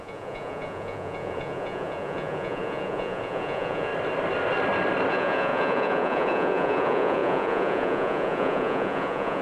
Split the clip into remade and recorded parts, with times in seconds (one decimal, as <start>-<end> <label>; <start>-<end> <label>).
0.0-3.9 remade; 3.9-5.1 recorded; 5.1-9.4 remade